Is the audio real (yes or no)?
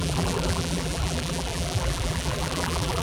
no